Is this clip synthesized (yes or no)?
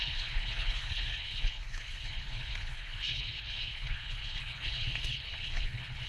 yes